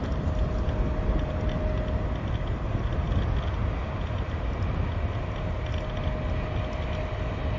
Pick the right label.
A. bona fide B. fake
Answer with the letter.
A